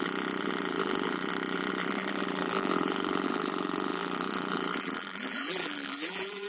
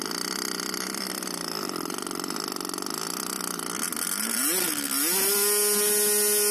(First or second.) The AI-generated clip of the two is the first